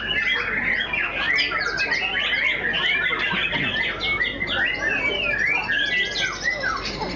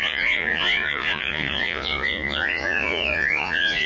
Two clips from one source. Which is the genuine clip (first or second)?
first